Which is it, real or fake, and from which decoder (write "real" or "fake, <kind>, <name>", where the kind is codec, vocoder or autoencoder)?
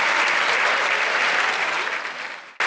real